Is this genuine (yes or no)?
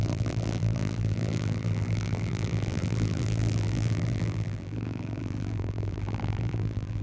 no